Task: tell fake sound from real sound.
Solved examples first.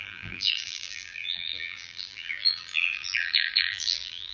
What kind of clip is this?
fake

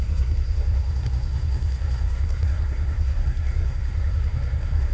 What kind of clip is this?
fake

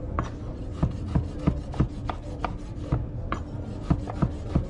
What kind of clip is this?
real